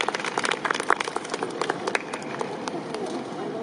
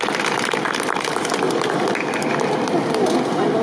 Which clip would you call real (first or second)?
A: second